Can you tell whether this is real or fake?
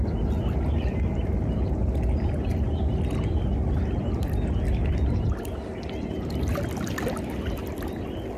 real